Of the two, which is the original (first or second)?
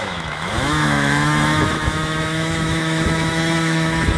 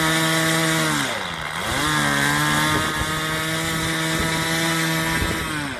second